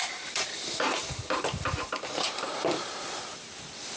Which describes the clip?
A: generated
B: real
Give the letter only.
A